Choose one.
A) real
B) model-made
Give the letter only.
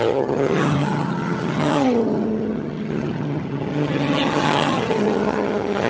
B